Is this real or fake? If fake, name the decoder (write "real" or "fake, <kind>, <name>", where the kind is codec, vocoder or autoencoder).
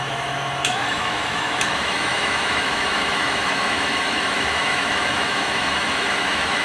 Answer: fake, autoencoder, DAC-VAE